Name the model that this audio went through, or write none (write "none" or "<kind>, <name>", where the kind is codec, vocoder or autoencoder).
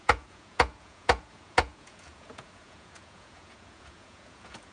vocoder, Vocos